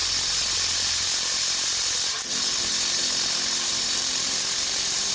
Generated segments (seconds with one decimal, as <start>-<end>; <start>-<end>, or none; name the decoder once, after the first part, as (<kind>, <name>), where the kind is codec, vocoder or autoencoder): 2.3-2.7 (vocoder, BigVGAN v2); 3.6-5.1

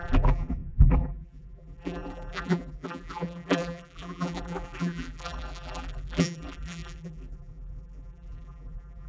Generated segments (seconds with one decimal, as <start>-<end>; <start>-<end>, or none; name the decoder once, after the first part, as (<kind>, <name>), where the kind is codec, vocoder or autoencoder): 0.0-9.1 (vocoder, BigVGAN v2)

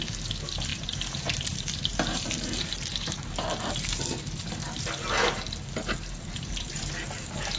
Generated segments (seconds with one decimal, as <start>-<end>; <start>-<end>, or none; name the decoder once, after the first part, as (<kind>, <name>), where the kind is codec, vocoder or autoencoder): 0.0-7.6 (vocoder, BigVGAN v2)

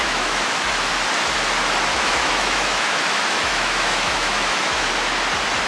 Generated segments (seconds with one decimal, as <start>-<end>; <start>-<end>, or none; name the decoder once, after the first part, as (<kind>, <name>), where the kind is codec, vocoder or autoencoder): 0.0-0.9 (autoencoder, DAC-VAE); 1.9-4.9

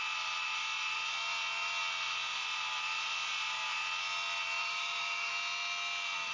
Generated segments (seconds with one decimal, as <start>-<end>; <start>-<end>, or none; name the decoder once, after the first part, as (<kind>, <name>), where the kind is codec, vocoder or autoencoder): 4.6-5.3 (autoencoder, DAC-VAE)

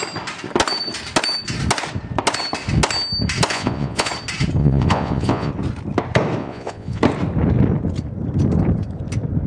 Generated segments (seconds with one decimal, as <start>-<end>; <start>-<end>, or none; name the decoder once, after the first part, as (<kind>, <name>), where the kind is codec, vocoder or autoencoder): 3.5-4.1 (vocoder, Vocos); 4.6-5.5; 6.4-7.0